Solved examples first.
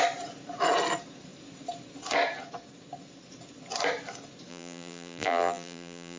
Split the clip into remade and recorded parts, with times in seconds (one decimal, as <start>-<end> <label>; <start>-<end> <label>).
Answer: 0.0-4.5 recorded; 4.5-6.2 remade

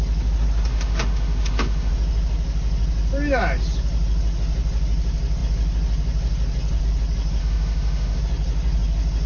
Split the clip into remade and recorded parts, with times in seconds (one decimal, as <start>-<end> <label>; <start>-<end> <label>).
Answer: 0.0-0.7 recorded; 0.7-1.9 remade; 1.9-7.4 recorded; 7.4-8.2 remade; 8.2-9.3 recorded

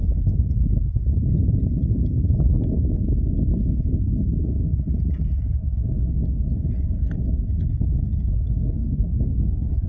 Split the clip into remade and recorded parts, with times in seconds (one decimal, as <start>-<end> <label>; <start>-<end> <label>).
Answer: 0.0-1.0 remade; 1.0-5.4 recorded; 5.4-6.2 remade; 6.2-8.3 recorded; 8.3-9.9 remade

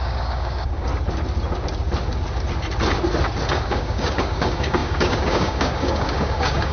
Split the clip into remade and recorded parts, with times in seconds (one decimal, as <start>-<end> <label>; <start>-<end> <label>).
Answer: 0.0-0.9 remade; 0.9-3.5 recorded; 3.5-6.7 remade